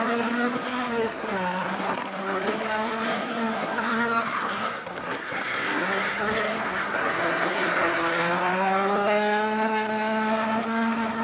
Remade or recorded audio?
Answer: remade